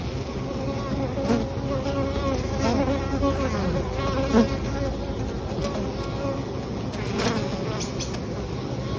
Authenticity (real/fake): real